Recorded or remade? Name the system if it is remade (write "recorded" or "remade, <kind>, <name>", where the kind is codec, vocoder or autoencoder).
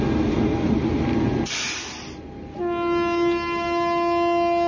recorded